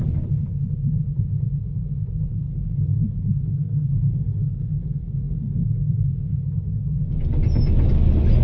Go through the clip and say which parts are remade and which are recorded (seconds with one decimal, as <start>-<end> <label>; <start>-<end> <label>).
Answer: 0.0-2.3 recorded; 2.3-6.4 remade; 6.4-8.4 recorded